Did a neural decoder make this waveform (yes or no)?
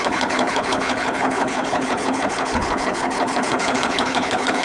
yes